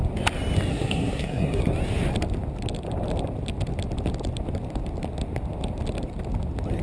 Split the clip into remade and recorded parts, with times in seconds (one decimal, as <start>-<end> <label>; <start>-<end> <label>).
0.0-0.7 recorded; 0.7-1.6 remade; 1.6-6.8 recorded